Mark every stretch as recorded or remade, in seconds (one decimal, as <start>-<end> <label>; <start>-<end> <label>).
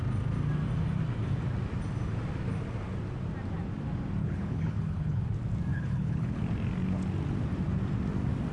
0.0-4.2 recorded; 4.2-5.2 remade; 5.2-5.7 recorded; 5.7-6.4 remade; 6.4-8.5 recorded